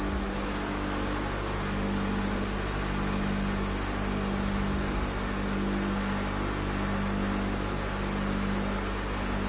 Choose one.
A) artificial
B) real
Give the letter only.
B